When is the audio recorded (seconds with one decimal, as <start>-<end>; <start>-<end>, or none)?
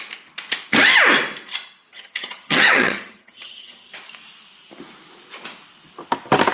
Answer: 0.0-1.9; 3.9-6.5